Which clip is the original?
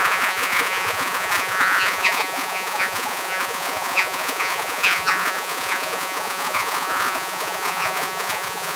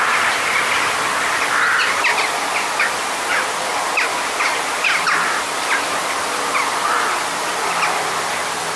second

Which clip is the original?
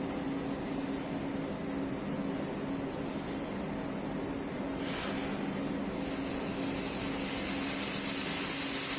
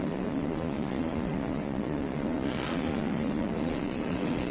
first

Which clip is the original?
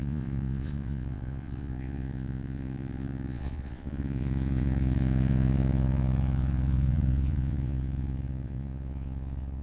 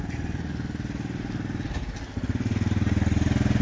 second